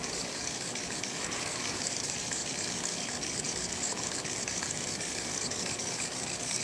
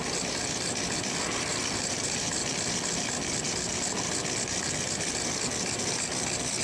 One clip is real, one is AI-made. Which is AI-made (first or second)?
first